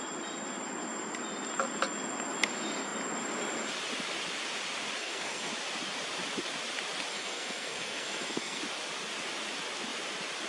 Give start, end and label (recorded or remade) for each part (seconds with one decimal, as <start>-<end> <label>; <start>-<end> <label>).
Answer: 0.0-5.0 recorded; 5.0-5.5 remade; 5.5-7.1 recorded; 7.1-8.6 remade; 8.6-10.5 recorded